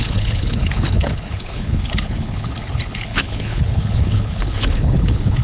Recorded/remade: remade